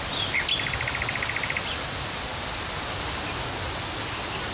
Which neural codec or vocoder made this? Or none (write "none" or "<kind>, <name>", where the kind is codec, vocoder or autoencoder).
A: none